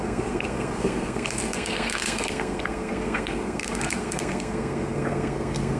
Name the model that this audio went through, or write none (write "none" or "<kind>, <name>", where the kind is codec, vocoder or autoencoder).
codec, SNAC